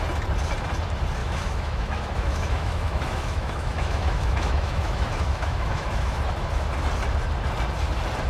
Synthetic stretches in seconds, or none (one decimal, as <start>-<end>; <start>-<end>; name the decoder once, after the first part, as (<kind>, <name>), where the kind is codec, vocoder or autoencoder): 1.2-6.2 (autoencoder, DAC-VAE)